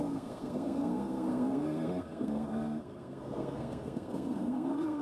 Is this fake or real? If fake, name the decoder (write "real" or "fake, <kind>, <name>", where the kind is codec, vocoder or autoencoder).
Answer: fake, codec, SNAC